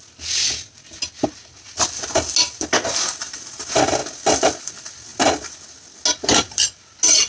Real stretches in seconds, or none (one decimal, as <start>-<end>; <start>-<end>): 0.0-7.3

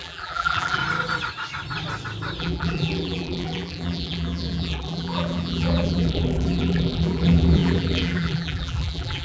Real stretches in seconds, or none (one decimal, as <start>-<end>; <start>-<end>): 0.8-2.4

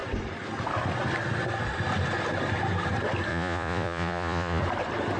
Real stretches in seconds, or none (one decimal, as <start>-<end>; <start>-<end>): 0.0-3.3; 4.6-5.2

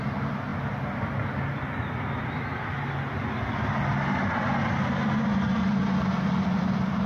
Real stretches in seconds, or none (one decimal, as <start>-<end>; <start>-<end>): 0.0-7.1

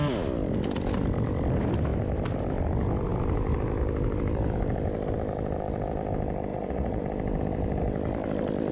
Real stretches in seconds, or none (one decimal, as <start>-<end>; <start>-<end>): 0.0-6.5; 7.0-8.7

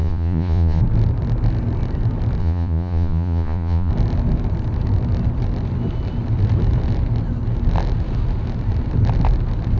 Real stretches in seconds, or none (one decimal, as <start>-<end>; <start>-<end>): 0.8-2.4; 3.9-9.8

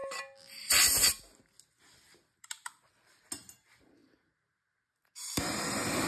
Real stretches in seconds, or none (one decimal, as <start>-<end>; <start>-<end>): 0.0-6.1